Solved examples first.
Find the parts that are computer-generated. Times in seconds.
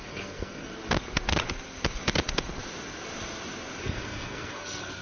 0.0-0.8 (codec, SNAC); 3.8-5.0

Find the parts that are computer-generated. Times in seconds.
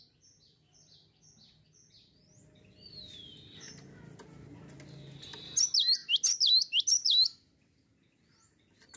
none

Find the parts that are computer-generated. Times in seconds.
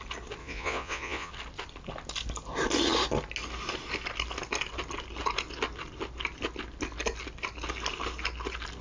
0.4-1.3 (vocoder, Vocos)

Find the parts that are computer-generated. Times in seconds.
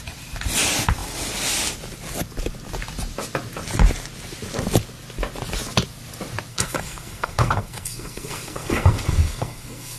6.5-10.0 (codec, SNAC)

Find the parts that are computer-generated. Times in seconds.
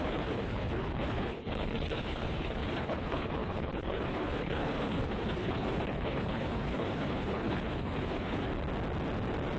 0.0-8.5 (codec, HILCodec)